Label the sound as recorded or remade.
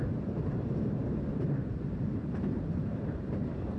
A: remade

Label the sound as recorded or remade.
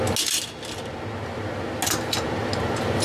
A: recorded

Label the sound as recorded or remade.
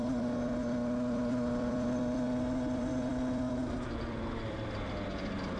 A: remade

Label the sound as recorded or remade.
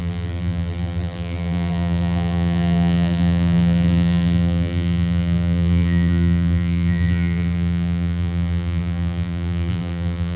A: remade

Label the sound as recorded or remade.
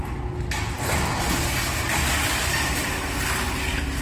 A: recorded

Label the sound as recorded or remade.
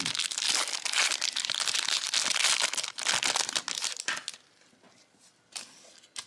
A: recorded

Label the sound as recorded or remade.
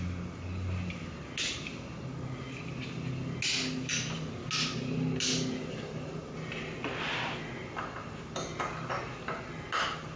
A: recorded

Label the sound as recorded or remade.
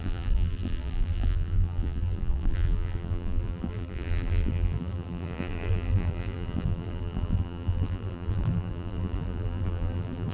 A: remade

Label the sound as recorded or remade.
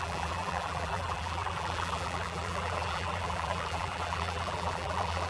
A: remade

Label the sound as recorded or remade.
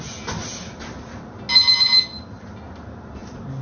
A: recorded